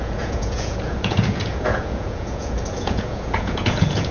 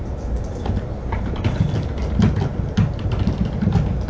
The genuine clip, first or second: second